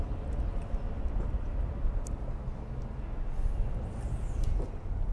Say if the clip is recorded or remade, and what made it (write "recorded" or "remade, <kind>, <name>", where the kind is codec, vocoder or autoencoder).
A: recorded